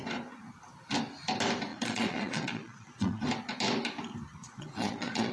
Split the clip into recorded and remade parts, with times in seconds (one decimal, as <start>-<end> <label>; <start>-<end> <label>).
0.0-1.7 recorded; 1.7-3.2 remade; 3.2-4.4 recorded; 4.4-5.3 remade